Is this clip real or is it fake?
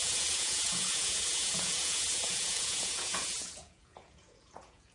fake